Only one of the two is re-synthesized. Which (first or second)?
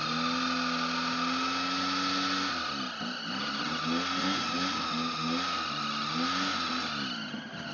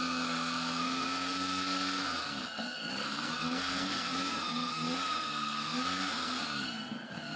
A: second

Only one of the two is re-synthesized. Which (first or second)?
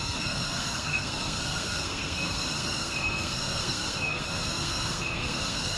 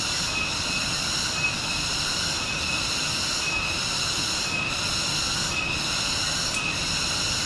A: first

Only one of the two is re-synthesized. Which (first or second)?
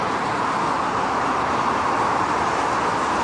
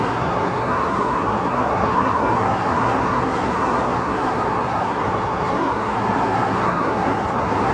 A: second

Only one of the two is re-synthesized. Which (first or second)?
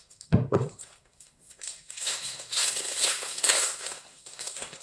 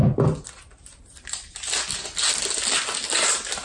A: first